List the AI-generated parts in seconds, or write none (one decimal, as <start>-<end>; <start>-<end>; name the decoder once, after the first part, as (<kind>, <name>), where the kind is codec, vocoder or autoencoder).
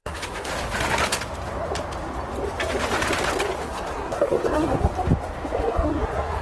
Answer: 0.0-0.5 (codec, SNAC); 3.6-4.9; 5.6-6.4